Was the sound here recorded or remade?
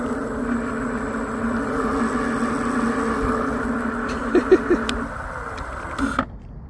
recorded